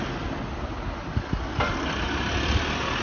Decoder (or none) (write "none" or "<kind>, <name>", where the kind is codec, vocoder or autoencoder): none